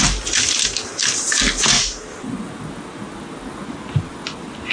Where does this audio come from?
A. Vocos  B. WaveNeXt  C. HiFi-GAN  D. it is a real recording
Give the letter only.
D